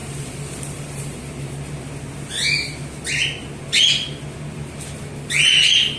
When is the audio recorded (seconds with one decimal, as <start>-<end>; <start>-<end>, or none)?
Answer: 1.5-6.0